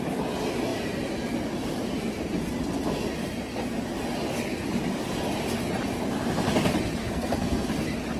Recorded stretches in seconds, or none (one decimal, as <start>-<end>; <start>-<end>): 0.0-7.0; 7.7-8.2